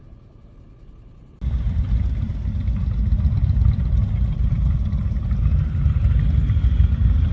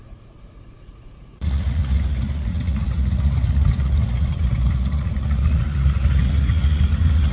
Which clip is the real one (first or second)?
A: first